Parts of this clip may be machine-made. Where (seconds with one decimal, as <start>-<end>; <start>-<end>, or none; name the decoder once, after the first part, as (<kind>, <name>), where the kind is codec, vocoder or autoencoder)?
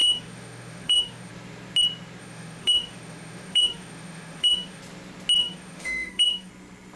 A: 0.0-1.3 (autoencoder, DAC-VAE); 2.2-4.8; 5.4-6.5